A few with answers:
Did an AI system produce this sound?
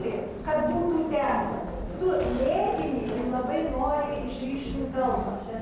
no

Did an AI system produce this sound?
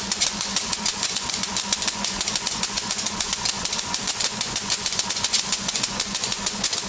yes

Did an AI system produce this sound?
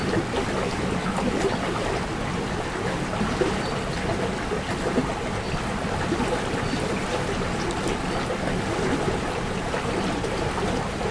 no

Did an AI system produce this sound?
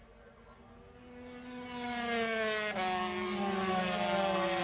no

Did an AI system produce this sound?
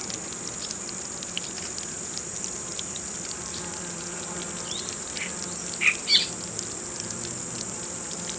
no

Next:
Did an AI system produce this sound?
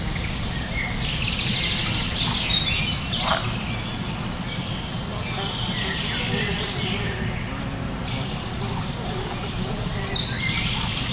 no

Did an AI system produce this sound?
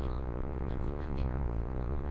yes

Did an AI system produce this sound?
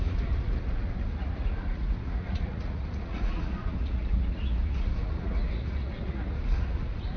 yes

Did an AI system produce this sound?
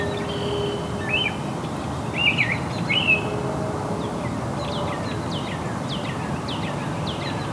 no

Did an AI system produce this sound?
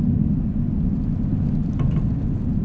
no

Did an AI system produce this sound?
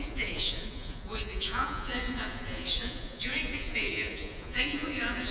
yes